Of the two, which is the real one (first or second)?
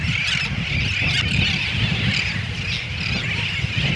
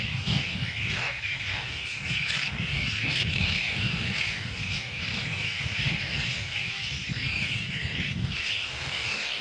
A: first